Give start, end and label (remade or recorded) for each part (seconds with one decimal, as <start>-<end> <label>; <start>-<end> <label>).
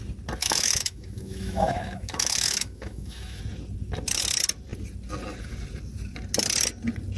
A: 0.0-0.4 recorded; 0.4-3.4 remade; 3.4-7.2 recorded